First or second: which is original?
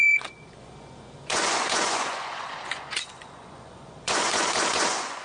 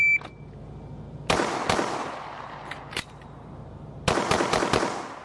second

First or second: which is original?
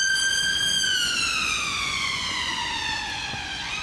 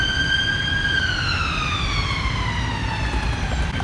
second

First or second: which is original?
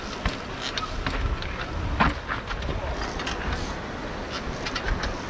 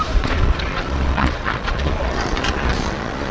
first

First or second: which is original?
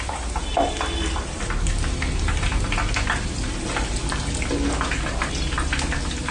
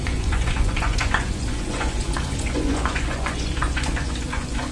first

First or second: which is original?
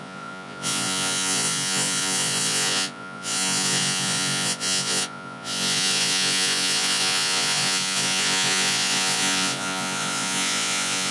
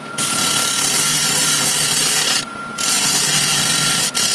second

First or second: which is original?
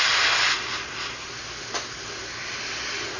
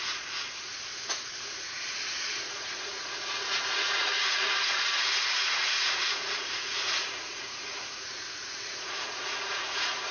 first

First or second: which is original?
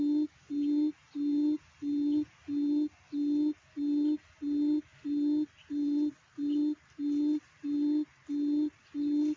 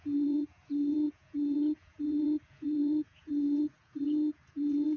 first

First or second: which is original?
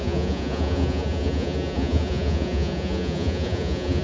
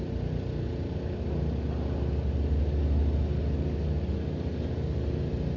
second